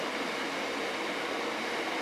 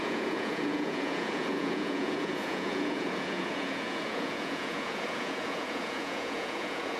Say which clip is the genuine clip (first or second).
first